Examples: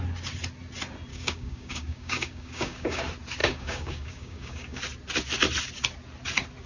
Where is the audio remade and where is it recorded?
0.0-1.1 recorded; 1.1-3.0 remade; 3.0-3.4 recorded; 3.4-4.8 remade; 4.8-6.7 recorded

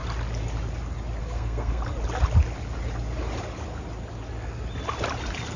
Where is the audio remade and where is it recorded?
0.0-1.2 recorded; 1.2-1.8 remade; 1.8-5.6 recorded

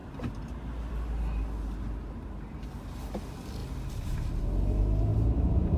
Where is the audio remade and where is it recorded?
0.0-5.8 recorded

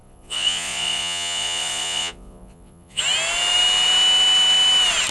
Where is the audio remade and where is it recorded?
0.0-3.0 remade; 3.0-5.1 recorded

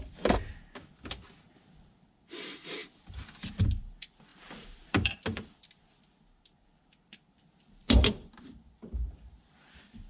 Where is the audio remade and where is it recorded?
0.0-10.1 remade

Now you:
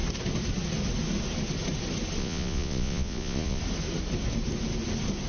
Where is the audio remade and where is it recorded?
0.0-2.2 recorded; 2.2-3.6 remade; 3.6-5.3 recorded

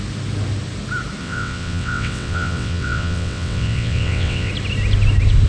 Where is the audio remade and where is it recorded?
0.0-1.2 recorded; 1.2-4.5 remade; 4.5-5.5 recorded

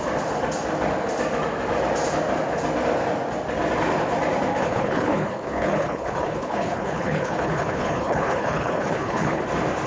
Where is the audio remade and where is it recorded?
0.0-4.5 recorded; 4.5-9.4 remade; 9.4-9.9 recorded